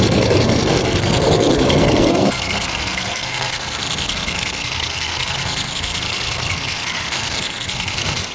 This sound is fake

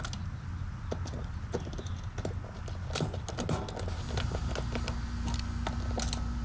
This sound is real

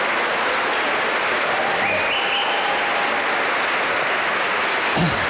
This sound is real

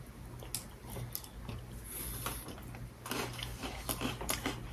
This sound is real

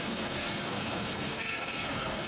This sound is fake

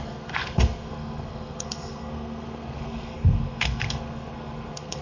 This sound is fake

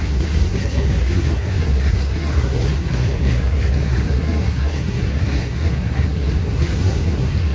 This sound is fake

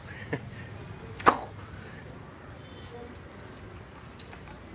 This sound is real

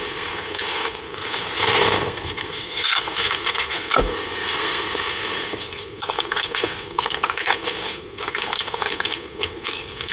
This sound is fake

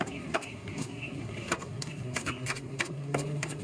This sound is fake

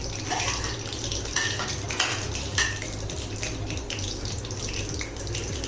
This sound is real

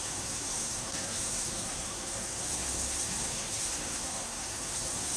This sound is fake